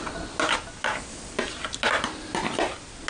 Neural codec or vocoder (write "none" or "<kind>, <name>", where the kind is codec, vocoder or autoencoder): none